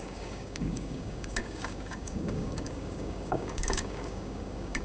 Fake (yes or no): yes